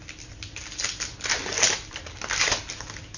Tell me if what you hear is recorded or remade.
recorded